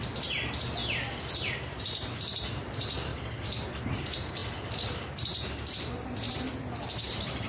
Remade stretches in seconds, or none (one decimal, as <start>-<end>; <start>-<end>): 0.0-0.8; 1.8-3.1; 3.8-7.5